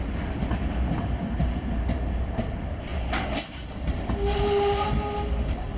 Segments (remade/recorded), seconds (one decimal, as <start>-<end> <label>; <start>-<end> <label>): 0.0-5.8 recorded